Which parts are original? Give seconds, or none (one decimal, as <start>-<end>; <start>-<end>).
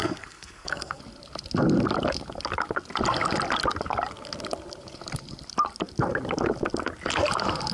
1.0-7.7